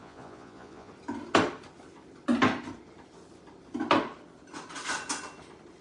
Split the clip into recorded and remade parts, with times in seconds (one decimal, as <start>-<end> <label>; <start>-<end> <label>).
0.0-0.9 remade; 0.9-5.8 recorded